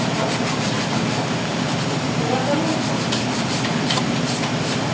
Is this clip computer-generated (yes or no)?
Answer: no